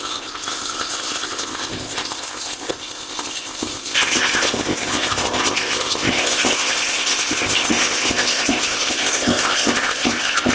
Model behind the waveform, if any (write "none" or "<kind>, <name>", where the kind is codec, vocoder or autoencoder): codec, ZipCodec